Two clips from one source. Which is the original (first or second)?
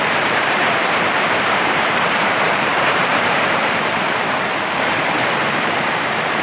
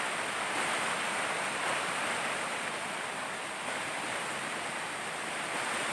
second